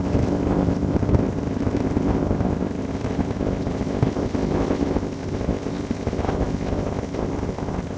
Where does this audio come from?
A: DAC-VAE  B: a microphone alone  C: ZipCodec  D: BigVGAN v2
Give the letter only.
C